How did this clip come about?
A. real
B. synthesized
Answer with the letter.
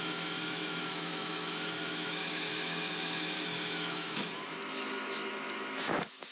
B